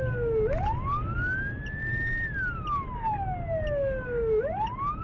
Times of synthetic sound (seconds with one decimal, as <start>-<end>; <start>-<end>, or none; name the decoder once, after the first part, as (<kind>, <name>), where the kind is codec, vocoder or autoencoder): none